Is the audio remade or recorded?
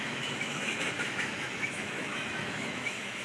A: remade